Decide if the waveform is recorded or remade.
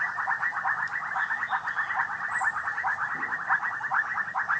recorded